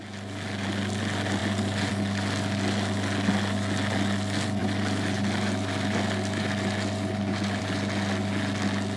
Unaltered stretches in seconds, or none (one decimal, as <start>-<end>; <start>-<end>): 0.0-1.4; 1.9-4.6; 7.6-9.0

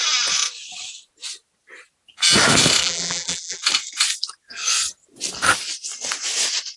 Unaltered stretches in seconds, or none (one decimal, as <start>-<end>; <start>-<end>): 0.0-2.8; 3.6-6.8

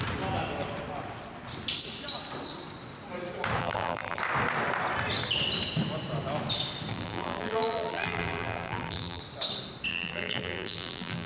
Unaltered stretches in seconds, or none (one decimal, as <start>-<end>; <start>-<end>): 0.0-3.6; 4.2-6.9; 9.2-9.9